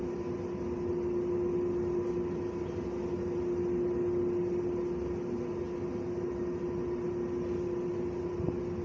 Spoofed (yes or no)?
no